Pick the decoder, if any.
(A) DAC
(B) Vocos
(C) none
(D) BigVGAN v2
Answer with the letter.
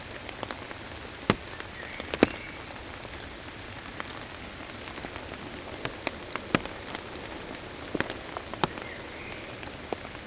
C